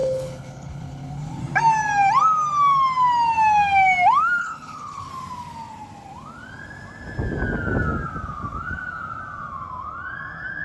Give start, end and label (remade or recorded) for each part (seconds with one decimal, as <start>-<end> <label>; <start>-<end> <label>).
0.0-1.4 remade; 1.4-4.4 recorded; 4.4-5.1 remade; 5.1-10.6 recorded